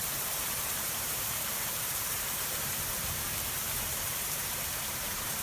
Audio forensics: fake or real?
fake